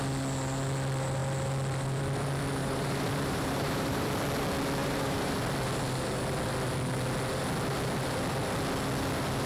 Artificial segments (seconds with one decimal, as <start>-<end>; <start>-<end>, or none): 2.6-4.1; 4.8-5.3